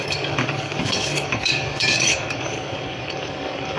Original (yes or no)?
no